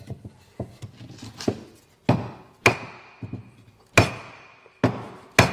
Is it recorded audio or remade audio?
recorded